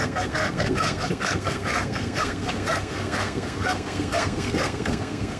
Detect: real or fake fake